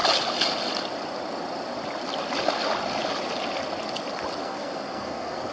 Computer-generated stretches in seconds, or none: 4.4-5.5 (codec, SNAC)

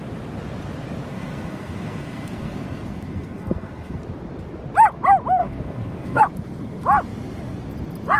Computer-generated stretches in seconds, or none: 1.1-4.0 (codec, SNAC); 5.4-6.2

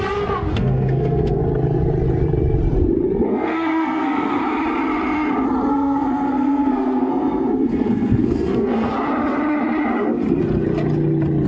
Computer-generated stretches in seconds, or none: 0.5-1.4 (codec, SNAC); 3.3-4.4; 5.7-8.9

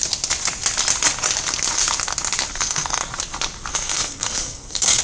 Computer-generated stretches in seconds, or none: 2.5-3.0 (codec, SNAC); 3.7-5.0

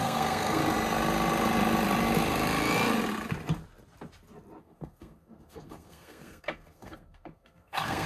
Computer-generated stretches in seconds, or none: 0.0-0.6 (codec, SNAC); 4.6-8.1

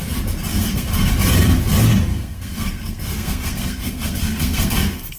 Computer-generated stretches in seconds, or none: 0.5-1.1 (codec, SNAC); 2.1-5.2